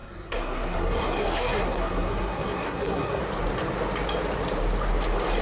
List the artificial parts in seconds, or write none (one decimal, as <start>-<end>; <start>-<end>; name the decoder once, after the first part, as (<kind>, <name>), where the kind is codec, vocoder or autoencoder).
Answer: 0.0-3.2 (codec, SNAC)